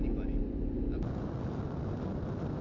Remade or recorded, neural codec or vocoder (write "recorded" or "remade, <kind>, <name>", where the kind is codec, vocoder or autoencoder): recorded